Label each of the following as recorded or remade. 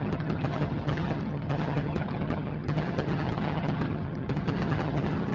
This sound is remade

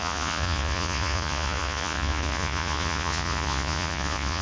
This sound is remade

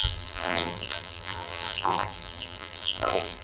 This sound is remade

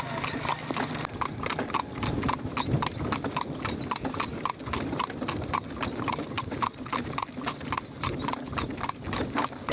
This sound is recorded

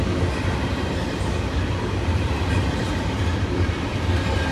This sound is remade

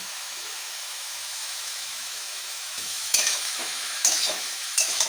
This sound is remade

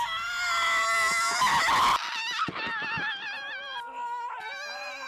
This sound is recorded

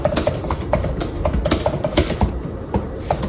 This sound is remade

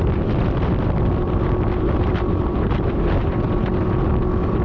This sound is recorded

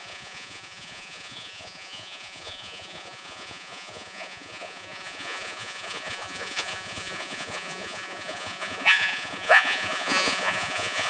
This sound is remade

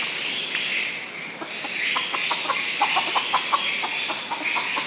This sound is recorded